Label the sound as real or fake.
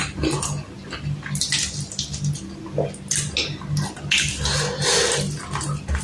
real